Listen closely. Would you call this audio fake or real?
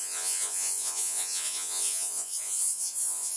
fake